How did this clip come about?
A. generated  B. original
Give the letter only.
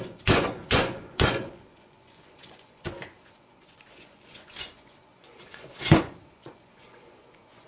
A